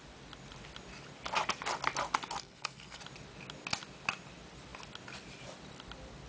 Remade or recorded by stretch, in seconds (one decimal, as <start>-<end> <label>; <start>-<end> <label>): 0.0-2.4 recorded; 2.4-3.0 remade; 3.0-6.3 recorded